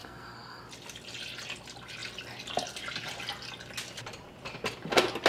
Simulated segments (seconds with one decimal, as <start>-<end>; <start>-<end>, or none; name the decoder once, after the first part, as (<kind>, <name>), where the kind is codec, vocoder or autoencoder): 0.0-0.6 (codec, SNAC)

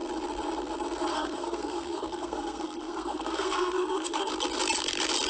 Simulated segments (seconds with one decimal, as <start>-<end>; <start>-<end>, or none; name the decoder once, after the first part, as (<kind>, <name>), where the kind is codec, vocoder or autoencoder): 1.1-4.3 (codec, SNAC)

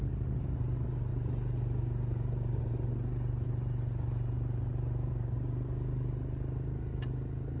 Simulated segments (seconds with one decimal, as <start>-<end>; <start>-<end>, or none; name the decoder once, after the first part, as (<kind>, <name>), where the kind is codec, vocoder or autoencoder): none